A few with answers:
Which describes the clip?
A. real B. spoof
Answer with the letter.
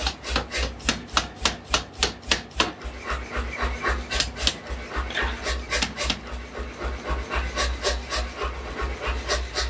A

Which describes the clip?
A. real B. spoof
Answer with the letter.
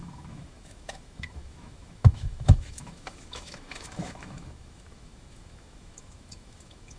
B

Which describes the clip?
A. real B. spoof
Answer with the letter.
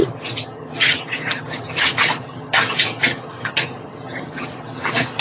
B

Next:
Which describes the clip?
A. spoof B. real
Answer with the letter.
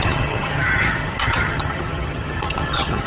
A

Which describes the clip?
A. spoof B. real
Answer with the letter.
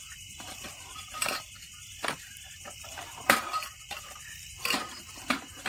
A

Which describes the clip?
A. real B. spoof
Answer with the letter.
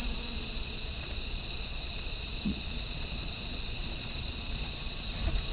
B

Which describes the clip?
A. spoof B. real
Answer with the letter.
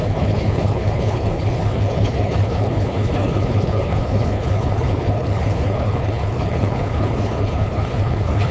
A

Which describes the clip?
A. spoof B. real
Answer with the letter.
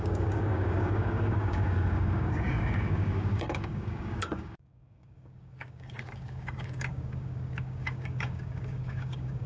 A